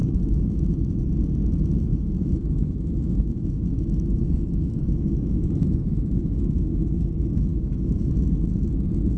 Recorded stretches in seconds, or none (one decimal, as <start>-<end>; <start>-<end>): 1.0-1.9; 7.0-7.5; 8.1-9.2